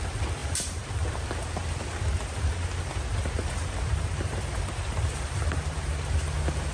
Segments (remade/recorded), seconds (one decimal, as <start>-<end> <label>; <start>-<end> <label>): 0.0-0.4 recorded; 0.4-0.9 remade; 0.9-3.1 recorded; 3.1-6.0 remade; 6.0-6.7 recorded